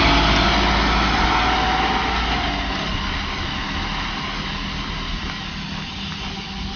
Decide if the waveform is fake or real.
real